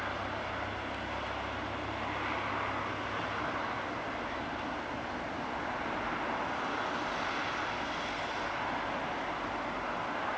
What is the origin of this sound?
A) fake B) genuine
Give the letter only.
B